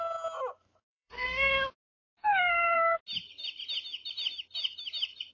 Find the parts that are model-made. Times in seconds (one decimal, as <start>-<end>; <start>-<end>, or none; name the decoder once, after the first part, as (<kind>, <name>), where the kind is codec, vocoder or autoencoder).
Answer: 0.9-1.5 (codec, SNAC); 2.2-3.0